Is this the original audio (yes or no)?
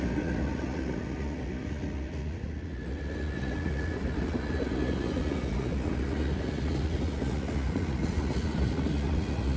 no